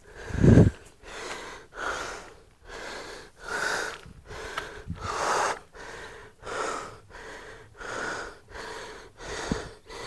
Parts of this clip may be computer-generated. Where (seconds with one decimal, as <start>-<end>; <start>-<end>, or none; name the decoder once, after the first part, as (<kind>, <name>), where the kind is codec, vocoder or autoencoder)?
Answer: none